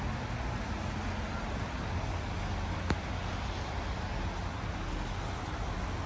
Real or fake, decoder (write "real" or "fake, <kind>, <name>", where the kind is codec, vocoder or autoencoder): real